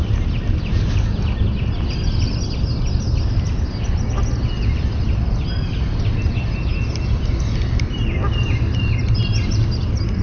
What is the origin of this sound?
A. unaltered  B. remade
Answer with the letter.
A